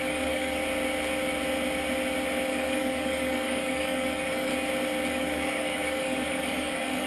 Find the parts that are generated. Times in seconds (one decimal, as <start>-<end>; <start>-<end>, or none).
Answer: 0.0-0.6; 2.5-4.5; 5.1-7.1